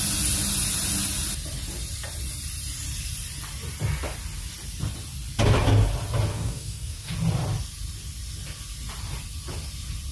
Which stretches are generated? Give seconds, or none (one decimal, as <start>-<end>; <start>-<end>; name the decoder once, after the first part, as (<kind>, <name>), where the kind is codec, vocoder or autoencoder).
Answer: 6.3-7.1 (codec, DAC)